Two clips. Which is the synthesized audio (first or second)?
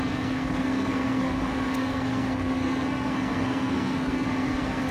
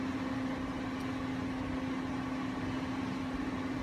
first